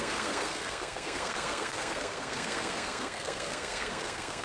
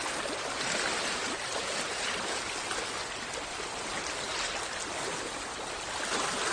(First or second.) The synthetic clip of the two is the first